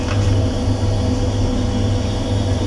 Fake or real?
real